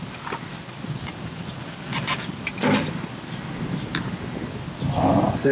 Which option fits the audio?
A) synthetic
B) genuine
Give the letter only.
B